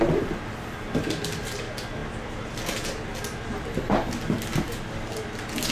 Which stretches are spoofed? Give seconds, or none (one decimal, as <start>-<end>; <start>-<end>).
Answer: none